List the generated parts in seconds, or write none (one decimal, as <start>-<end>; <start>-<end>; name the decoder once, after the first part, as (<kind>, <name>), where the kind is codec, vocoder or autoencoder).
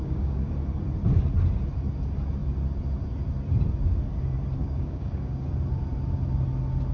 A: 0.0-0.5 (codec, DAC); 4.6-5.5